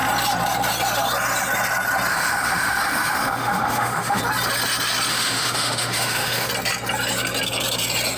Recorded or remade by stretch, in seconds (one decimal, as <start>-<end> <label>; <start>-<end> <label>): 0.0-2.1 recorded; 2.1-4.2 remade; 4.2-5.1 recorded; 5.1-6.5 remade; 6.5-8.2 recorded